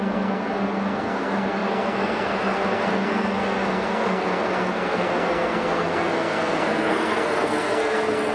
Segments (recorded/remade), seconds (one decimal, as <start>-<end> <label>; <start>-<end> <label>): 0.0-8.3 remade